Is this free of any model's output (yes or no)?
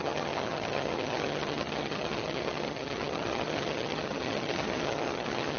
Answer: no